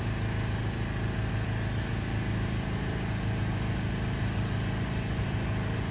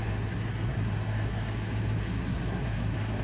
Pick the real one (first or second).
first